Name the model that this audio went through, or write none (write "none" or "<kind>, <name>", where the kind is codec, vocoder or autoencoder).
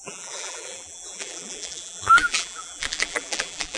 vocoder, BigVGAN v2